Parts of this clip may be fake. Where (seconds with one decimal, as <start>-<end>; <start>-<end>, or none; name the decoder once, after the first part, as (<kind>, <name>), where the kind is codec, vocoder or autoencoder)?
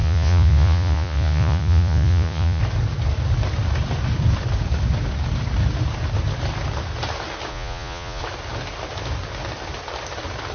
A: 0.0-2.6 (vocoder, Vocos); 7.5-8.2